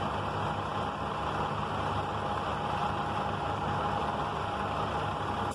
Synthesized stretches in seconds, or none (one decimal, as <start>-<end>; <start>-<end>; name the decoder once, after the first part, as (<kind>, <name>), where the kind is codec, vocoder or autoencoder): none